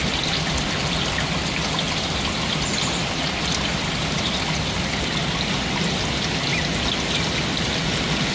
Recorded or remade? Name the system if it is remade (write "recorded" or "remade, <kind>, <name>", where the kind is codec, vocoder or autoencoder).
recorded